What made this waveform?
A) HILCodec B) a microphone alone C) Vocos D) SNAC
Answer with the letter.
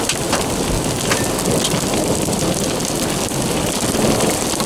B